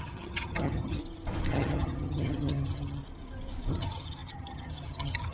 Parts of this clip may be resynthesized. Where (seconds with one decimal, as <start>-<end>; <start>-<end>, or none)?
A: 0.0-1.0; 1.5-3.0; 3.7-5.3